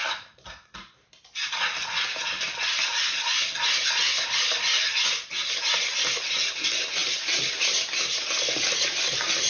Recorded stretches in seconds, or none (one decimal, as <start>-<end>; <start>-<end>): 0.0-9.5